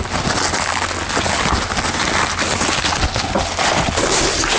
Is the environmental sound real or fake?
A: real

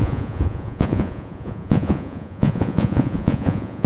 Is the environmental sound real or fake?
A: fake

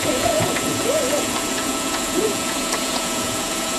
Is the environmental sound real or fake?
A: fake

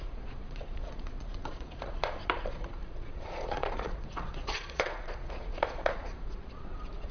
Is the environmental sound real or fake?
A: fake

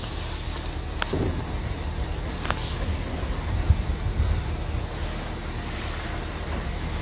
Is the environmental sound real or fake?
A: real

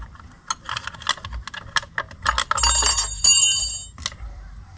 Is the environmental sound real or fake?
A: real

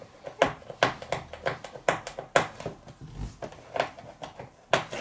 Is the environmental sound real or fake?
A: real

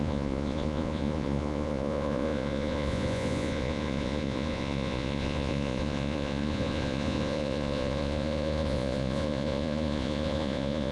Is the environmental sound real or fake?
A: fake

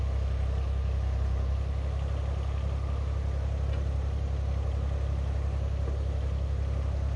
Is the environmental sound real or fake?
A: real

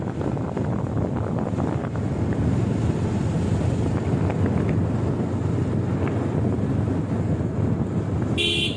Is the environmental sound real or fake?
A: real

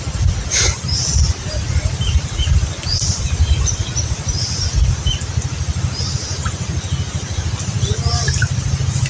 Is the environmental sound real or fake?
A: real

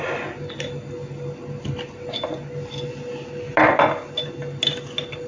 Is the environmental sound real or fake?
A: real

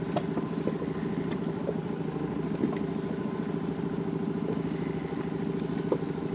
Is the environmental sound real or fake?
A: real